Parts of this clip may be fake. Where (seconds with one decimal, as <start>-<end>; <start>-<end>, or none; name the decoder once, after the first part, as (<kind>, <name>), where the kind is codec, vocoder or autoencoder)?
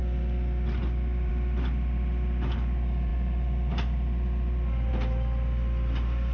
none